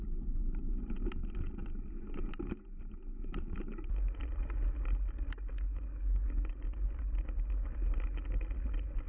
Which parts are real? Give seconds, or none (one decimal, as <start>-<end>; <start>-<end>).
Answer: 0.0-6.0; 6.8-9.1